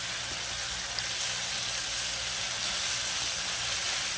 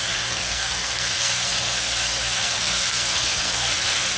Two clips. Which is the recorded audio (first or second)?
first